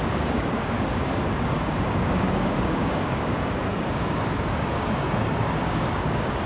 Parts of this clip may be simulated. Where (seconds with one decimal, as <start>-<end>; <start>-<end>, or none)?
0.0-6.5